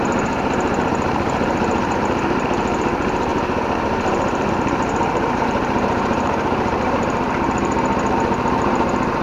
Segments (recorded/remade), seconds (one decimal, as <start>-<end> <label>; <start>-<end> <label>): 0.0-9.2 remade